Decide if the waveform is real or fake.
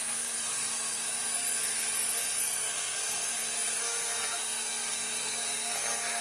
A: fake